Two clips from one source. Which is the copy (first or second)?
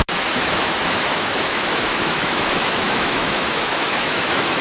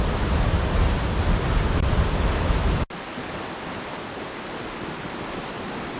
first